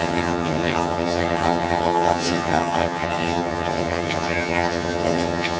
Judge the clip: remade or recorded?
remade